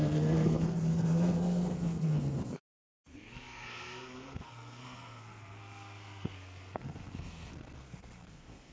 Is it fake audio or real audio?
fake